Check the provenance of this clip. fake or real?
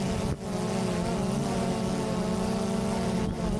real